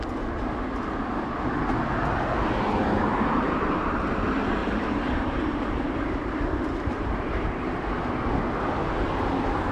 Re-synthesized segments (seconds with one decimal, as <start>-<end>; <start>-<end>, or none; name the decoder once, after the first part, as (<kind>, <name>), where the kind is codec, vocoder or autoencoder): 3.1-4.0 (vocoder, BigVGAN v2); 4.6-8.0